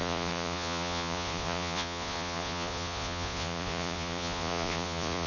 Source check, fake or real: fake